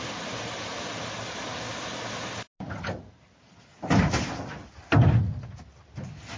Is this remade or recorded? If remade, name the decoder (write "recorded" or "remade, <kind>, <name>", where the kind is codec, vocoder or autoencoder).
recorded